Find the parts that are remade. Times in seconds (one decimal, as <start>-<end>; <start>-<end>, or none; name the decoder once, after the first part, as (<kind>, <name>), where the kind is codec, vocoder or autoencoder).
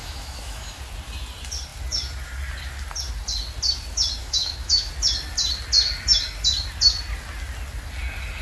0.0-0.8 (autoencoder, DAC-VAE); 4.2-4.9